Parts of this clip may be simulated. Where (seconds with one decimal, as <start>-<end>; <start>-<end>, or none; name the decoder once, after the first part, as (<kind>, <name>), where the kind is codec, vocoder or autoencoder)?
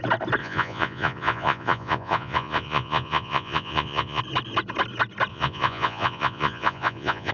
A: 0.4-4.2 (vocoder, Vocos); 5.3-7.3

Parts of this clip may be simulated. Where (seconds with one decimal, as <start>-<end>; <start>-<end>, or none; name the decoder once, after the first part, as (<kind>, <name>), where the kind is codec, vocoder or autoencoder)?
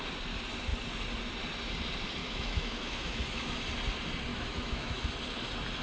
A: 2.2-3.5 (autoencoder, DAC-VAE); 4.3-5.1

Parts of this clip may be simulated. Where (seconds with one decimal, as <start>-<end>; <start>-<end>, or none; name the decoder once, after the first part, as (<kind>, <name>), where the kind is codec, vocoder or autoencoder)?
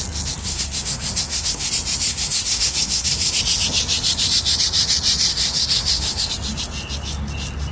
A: 0.4-1.7 (codec, SNAC); 2.1-3.4; 5.3-6.3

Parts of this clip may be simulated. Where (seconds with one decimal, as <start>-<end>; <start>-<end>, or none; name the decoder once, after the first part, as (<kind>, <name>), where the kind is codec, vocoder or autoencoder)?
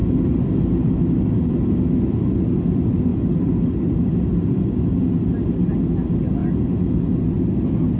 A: 3.1-5.1 (vocoder, BigVGAN v2); 6.4-7.2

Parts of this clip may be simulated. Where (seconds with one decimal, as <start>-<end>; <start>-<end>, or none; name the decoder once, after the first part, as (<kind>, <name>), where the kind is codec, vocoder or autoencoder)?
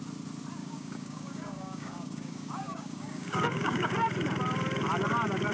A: 0.6-3.9 (codec, DAC)